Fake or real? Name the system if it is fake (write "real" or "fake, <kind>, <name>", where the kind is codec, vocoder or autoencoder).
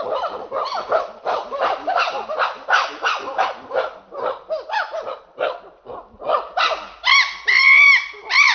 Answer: real